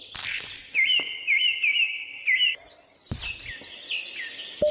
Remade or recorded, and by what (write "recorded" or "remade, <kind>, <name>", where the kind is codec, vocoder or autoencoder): recorded